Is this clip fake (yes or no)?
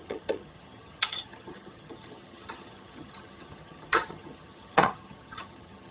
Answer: yes